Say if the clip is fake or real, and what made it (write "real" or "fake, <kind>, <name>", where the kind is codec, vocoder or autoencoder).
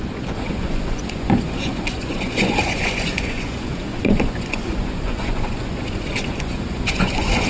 fake, vocoder, Vocos